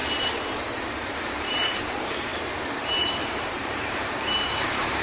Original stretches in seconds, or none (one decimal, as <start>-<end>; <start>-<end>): none

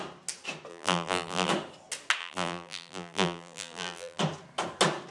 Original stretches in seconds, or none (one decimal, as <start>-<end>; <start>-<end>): 0.0-0.7; 1.5-2.2; 4.2-5.1

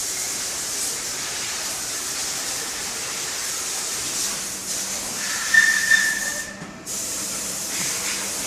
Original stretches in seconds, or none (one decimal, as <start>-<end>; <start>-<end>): 3.0-5.1

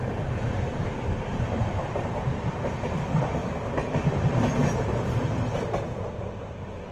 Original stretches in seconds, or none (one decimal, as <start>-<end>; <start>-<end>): 3.4-3.9

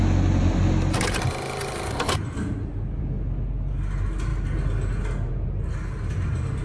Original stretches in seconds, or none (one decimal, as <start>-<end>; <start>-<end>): 0.0-6.6

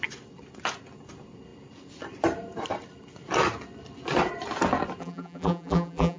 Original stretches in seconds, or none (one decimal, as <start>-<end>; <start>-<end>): 0.0-5.0